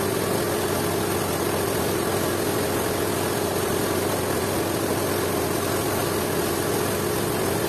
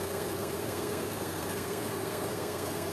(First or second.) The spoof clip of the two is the second